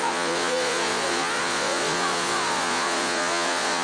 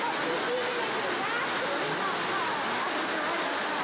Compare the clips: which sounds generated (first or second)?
first